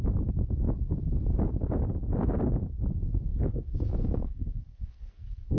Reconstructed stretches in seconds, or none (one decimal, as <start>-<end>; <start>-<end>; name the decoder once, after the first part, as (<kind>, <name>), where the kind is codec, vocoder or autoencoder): 3.3-5.6 (codec, SNAC)